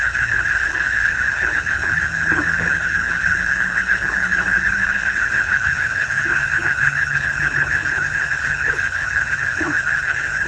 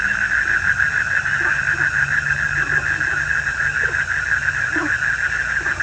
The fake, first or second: first